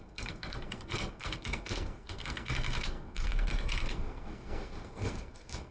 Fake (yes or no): yes